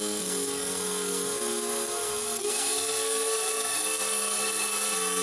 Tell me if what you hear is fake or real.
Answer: fake